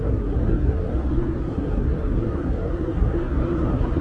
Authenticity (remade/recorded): remade